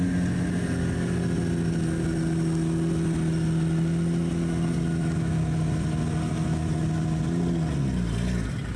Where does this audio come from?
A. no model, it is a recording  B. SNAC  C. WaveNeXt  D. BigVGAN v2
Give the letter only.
A